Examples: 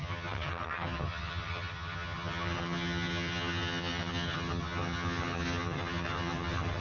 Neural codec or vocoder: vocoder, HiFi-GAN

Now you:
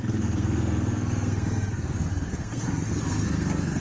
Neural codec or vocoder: codec, SNAC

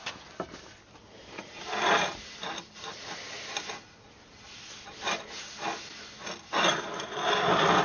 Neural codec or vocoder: none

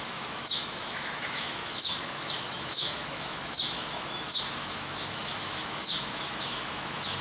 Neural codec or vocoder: autoencoder, DAC-VAE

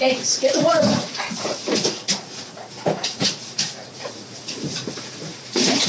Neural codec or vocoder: vocoder, Vocos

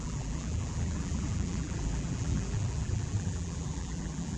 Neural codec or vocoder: vocoder, BigVGAN v2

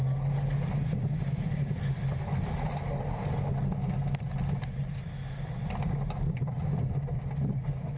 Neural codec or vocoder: none